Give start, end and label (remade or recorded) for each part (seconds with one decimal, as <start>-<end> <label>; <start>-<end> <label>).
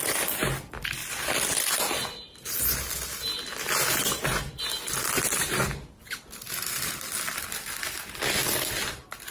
0.0-9.3 recorded